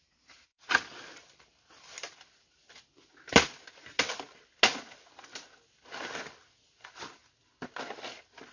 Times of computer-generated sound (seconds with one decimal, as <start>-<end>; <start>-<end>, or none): none